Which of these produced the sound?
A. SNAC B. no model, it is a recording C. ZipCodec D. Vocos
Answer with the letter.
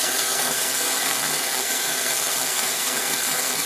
A